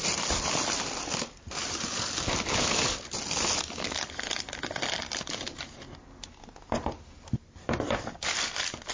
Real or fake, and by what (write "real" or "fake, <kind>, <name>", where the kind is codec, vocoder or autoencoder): real